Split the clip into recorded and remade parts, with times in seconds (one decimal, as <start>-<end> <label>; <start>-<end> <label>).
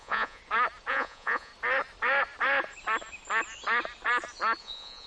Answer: 0.0-0.4 remade; 0.4-0.9 recorded; 0.9-1.5 remade; 1.5-4.6 recorded; 4.6-5.1 remade